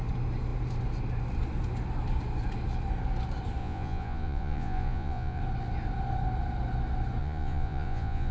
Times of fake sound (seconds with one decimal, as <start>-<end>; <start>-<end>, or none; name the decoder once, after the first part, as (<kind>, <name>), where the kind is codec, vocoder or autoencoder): 3.6-5.4 (vocoder, Vocos); 7.2-8.3